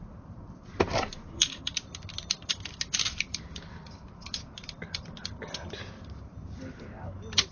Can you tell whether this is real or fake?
real